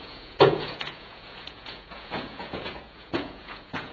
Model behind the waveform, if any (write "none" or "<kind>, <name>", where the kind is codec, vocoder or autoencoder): vocoder, Vocos